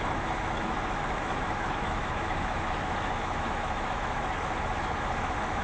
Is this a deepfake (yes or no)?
yes